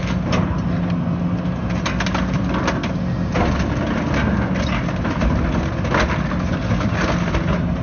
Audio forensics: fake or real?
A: real